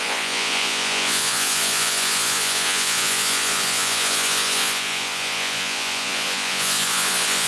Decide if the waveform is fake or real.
fake